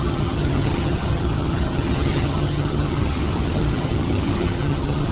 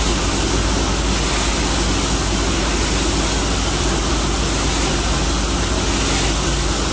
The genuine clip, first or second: second